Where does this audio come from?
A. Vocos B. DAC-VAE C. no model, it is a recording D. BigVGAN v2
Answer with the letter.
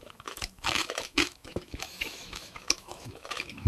B